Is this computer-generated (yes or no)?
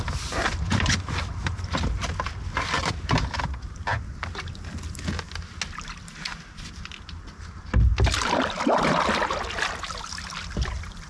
no